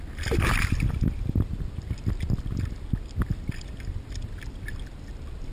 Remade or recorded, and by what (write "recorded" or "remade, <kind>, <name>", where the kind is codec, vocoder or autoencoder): recorded